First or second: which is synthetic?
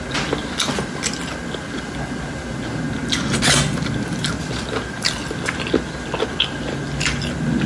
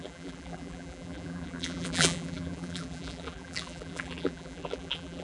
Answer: second